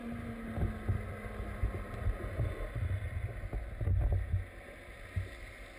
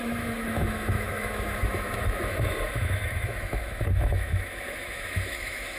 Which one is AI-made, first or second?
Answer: second